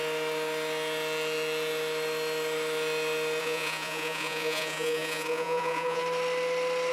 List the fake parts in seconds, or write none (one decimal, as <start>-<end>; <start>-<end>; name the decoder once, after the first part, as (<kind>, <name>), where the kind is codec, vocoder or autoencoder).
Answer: 3.4-6.0 (vocoder, Vocos)